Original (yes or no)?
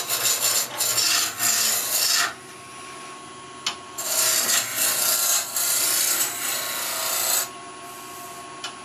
yes